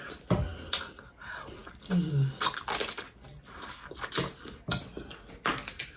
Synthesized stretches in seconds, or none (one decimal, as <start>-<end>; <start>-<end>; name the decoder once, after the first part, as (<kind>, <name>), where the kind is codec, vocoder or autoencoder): none